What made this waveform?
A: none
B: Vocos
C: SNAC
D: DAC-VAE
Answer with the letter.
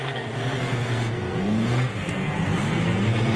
C